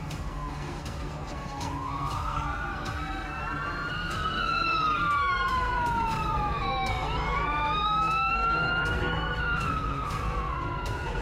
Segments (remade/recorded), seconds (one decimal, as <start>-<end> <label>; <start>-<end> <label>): 0.0-3.4 remade; 3.4-3.9 recorded; 3.9-11.2 remade